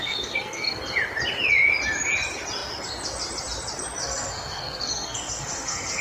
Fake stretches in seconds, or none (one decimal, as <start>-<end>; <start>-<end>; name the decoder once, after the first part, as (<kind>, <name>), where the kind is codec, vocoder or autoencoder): 0.0-0.8 (codec, SNAC); 4.0-6.0

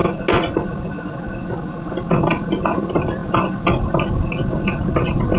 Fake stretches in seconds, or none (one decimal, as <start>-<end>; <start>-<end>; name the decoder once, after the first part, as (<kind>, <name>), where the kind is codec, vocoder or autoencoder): none